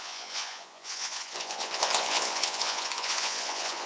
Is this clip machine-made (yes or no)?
yes